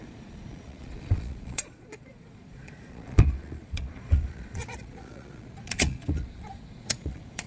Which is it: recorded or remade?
remade